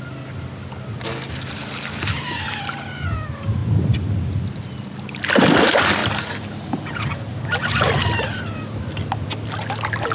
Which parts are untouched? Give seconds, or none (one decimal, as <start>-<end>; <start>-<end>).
0.0-6.0; 7.6-10.1